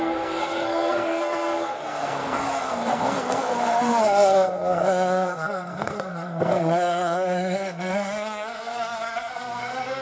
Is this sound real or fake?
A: fake